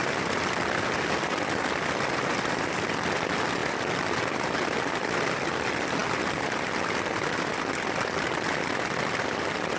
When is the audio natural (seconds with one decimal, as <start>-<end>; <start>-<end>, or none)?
0.0-9.8